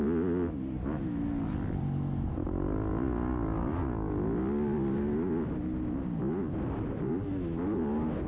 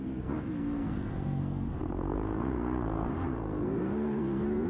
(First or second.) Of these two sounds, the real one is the first